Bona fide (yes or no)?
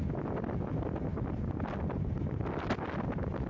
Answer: yes